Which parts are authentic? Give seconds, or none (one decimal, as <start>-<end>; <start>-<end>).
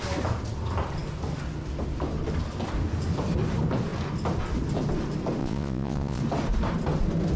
0.0-5.4; 6.2-7.4